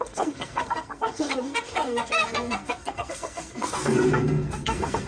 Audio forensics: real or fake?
fake